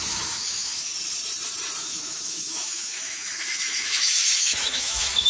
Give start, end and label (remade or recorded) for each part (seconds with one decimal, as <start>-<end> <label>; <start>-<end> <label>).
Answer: 0.0-0.9 remade; 0.9-1.8 recorded; 1.8-5.3 remade